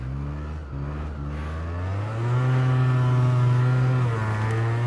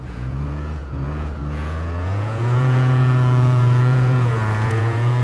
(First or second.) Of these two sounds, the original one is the first